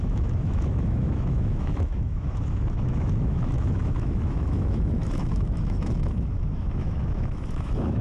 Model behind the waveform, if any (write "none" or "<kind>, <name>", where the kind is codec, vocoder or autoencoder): autoencoder, DAC-VAE